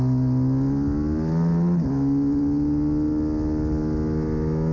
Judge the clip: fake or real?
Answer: real